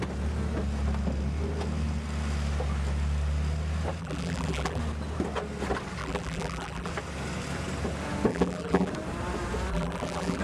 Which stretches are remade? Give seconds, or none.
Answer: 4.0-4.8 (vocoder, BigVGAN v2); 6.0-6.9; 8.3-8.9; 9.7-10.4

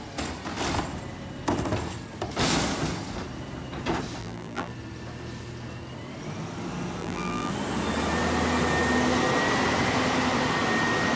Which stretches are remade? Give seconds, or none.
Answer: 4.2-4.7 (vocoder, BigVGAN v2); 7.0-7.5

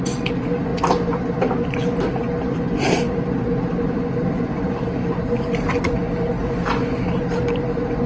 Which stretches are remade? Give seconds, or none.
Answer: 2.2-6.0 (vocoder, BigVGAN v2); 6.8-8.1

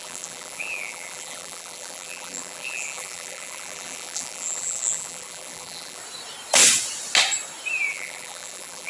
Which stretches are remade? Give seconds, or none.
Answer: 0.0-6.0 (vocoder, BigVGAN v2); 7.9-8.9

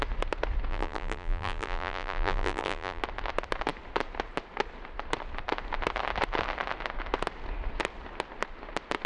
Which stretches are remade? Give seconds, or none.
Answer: 0.7-3.0 (vocoder, BigVGAN v2)

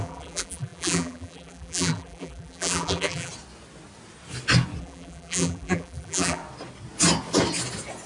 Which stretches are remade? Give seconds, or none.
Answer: 0.0-3.3 (vocoder, BigVGAN v2); 4.8-6.4

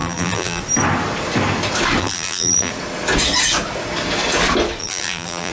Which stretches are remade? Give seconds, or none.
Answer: 0.0-0.6 (vocoder, BigVGAN v2); 2.0-2.7; 4.8-5.5